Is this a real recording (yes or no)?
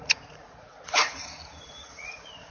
no